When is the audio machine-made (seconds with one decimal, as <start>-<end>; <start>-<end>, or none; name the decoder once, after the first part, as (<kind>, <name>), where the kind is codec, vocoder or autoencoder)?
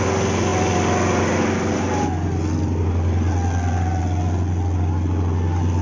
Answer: none